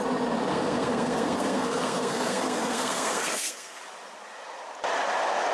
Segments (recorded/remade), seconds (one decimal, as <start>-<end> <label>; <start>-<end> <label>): 0.0-0.5 recorded; 0.5-3.8 remade; 3.8-5.5 recorded

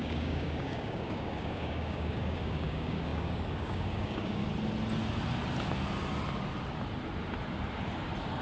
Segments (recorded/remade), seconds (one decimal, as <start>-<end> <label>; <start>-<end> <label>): 0.0-4.4 remade; 4.4-8.4 recorded